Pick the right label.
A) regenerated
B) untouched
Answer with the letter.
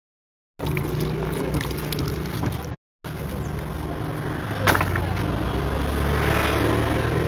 B